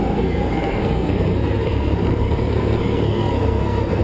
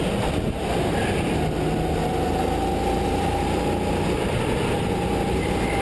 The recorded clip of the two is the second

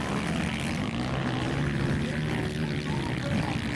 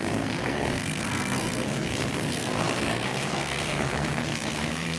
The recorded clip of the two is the first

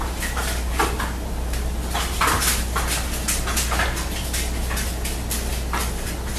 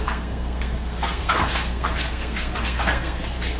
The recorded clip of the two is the first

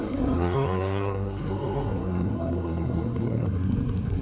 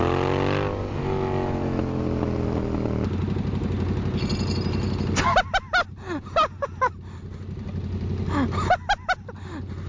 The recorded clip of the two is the second